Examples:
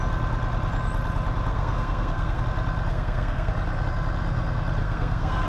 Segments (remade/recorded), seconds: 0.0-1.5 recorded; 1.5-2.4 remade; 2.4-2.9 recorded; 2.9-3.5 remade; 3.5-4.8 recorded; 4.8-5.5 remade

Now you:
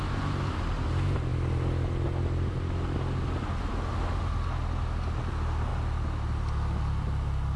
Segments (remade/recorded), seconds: 0.0-7.6 recorded

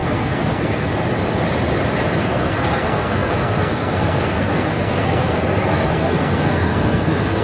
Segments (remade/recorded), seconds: 0.0-0.9 remade; 0.9-2.2 recorded; 2.2-7.4 remade

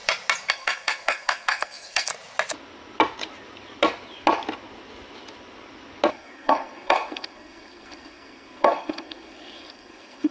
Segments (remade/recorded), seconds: 0.0-0.5 recorded; 0.5-2.1 remade; 2.1-6.1 recorded; 6.1-10.3 remade

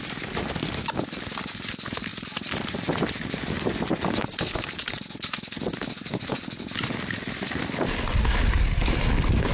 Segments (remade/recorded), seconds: 0.0-9.5 recorded

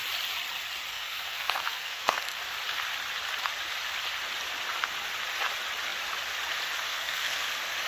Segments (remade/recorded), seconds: 0.0-0.9 recorded; 0.9-2.4 remade; 2.4-6.9 recorded; 6.9-7.5 remade; 7.5-7.9 recorded

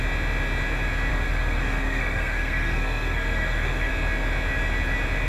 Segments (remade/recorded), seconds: 0.0-1.1 recorded; 1.1-3.9 remade; 3.9-5.3 recorded